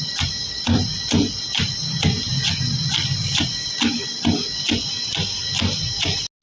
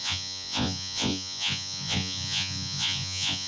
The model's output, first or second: second